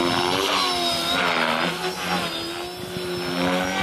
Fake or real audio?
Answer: real